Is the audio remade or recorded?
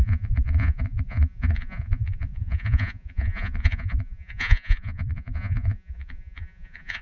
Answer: remade